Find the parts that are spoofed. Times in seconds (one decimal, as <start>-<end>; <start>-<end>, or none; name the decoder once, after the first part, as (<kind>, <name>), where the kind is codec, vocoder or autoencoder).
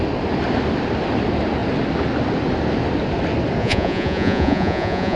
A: 3.6-5.2 (vocoder, Vocos)